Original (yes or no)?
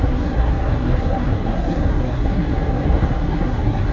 no